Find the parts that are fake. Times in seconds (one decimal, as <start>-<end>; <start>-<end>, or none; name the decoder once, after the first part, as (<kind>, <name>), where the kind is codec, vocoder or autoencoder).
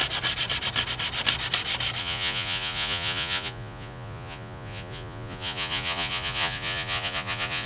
2.0-7.7 (vocoder, Vocos)